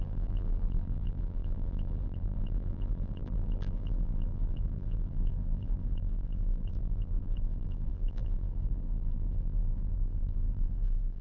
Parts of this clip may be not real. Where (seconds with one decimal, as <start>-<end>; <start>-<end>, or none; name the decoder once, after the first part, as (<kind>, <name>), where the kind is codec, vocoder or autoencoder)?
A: 0.0-11.2 (vocoder, BigVGAN v2)

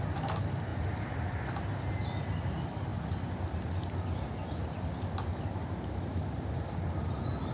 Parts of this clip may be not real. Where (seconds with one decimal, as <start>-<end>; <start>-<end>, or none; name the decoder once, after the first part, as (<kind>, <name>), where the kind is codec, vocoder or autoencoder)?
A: none

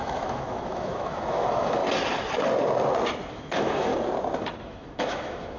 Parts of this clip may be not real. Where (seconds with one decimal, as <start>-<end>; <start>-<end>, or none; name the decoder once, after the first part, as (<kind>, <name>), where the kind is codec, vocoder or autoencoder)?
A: 0.0-1.8 (autoencoder, DAC-VAE); 3.3-3.9; 4.6-5.6

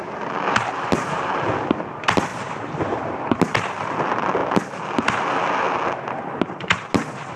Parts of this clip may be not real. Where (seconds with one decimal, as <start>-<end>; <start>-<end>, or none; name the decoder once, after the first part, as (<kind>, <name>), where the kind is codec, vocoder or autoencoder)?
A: none

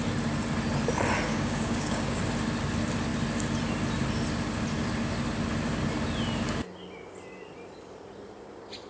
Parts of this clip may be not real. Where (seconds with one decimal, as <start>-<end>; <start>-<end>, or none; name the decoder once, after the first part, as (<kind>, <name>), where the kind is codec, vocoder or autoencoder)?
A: 1.3-2.2 (codec, DAC)

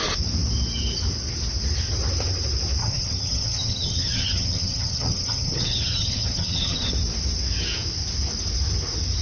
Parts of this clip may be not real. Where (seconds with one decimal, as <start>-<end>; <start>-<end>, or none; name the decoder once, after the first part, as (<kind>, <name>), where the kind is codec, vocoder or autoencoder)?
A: 2.8-6.9 (vocoder, HiFi-GAN)